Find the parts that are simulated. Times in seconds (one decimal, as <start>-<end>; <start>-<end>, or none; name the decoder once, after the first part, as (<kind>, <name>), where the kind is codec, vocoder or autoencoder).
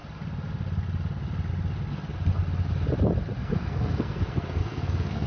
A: 3.4-5.3 (codec, SNAC)